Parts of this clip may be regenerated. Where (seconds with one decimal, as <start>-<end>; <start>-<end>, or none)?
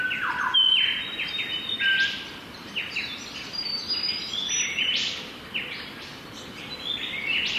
0.0-6.1